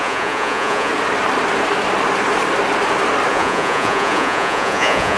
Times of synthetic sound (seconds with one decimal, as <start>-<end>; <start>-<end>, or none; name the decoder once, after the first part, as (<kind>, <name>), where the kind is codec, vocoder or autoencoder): 0.0-0.9 (vocoder, Vocos); 3.3-5.2